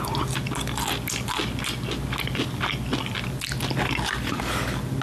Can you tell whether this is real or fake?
real